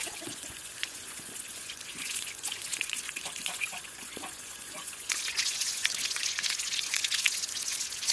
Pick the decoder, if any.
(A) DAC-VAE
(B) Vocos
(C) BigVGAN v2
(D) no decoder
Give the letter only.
B